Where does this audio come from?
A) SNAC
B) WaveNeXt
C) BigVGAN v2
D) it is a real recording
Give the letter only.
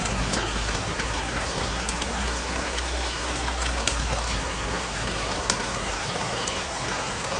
A